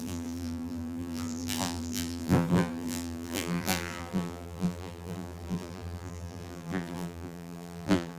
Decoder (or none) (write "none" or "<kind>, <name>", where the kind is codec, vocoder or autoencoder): vocoder, BigVGAN v2